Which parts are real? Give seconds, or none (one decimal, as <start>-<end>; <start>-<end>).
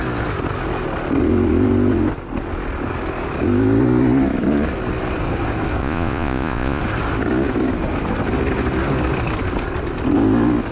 0.0-5.8; 6.8-10.7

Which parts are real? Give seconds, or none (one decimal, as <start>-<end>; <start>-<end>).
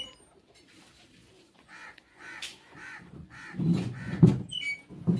0.0-1.2; 4.3-5.2